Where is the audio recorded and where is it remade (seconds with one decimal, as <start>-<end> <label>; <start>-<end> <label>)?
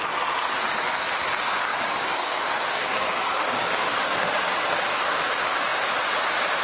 0.0-1.7 recorded; 1.7-4.5 remade; 4.5-6.6 recorded